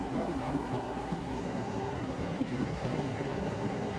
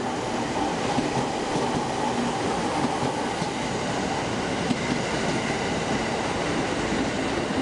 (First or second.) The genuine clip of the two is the second